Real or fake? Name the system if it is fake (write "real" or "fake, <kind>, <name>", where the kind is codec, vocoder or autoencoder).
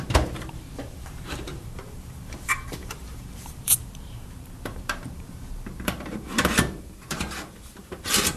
fake, vocoder, BigVGAN v2